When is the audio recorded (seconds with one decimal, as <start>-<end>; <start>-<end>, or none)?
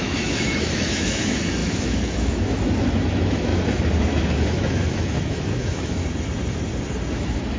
6.0-7.1